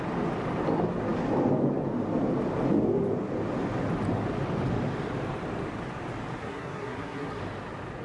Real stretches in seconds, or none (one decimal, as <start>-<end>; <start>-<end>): 0.0-6.4; 7.4-8.0